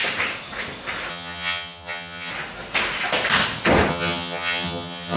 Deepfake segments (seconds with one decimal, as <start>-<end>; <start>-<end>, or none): 1.1-2.3; 3.9-5.2